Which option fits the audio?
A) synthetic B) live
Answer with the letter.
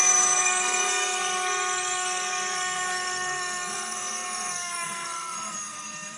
A